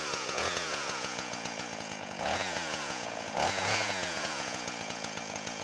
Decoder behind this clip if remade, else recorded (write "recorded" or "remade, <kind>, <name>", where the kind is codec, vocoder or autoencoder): remade, vocoder, Vocos